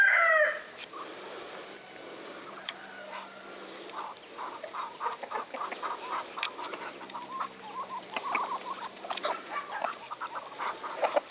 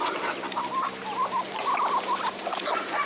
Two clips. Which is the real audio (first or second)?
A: second